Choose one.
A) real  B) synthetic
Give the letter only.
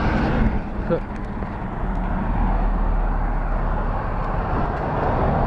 A